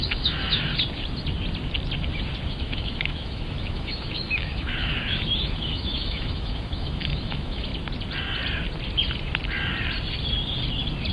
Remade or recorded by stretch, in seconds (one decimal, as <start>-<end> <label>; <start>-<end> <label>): 0.0-0.7 remade; 0.7-2.5 recorded; 2.5-7.7 remade; 7.7-11.1 recorded